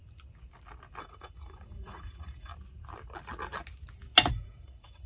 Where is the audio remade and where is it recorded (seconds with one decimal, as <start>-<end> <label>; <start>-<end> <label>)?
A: 0.0-1.0 recorded; 1.0-2.5 remade; 2.5-4.3 recorded; 4.3-5.1 remade

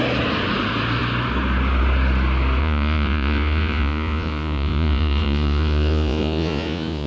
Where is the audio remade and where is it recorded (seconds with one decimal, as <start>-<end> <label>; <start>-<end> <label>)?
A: 0.0-2.6 recorded; 2.6-7.1 remade

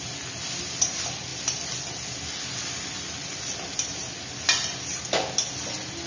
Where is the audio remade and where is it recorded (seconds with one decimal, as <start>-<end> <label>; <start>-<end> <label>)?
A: 0.0-6.1 recorded